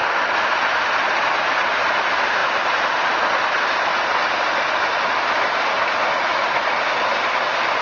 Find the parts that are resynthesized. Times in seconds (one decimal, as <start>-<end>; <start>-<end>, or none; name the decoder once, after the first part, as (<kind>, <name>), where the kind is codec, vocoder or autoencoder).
none